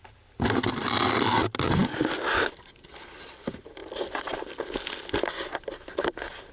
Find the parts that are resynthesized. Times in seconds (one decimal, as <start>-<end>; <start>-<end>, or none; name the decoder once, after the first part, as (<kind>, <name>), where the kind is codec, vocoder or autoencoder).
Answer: none